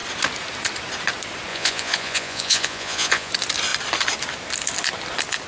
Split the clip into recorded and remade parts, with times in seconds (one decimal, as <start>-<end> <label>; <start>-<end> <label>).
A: 0.0-1.5 recorded; 1.5-3.3 remade; 3.3-5.5 recorded